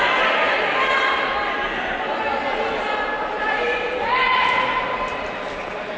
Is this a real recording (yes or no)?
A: yes